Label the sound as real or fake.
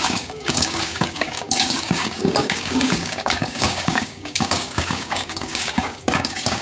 fake